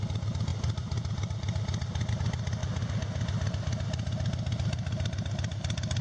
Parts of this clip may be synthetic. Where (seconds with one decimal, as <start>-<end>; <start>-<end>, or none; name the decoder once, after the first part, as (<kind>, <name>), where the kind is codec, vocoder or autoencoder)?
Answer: none